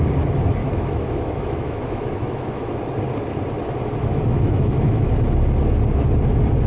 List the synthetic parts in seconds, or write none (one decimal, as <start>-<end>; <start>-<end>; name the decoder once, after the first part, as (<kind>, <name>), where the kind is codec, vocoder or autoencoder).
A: 0.6-2.7 (autoencoder, DAC-VAE); 4.0-5.1

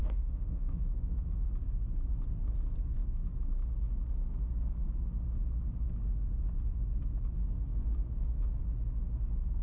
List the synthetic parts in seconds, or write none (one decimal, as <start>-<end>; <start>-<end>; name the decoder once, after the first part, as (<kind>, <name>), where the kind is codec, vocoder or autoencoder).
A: 0.0-1.5 (autoencoder, DAC-VAE)